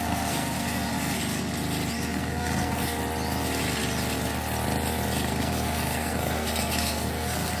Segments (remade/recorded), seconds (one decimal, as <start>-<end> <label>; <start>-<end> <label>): 0.0-1.2 remade; 1.2-2.1 recorded; 2.1-3.0 remade; 3.0-5.2 recorded; 5.2-7.6 remade